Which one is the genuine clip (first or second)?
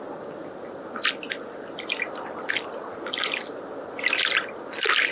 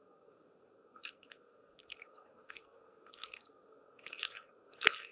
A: first